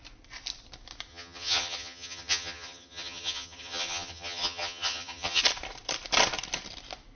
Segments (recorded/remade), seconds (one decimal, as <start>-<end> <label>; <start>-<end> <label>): 0.0-1.1 recorded; 1.1-5.4 remade; 5.4-7.1 recorded